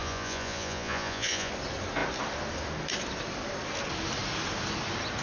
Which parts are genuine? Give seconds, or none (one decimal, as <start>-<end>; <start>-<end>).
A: 1.5-5.2